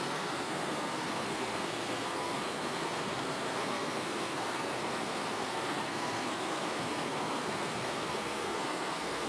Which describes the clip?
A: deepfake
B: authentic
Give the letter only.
A